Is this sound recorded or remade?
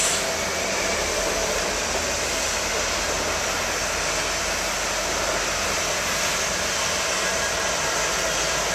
recorded